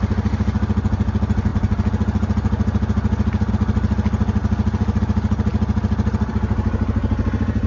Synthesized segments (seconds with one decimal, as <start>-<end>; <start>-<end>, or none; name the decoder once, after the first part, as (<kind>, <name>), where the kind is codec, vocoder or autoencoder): none